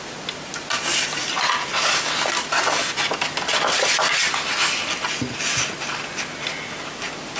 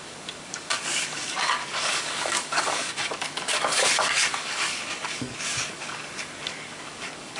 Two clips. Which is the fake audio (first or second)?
second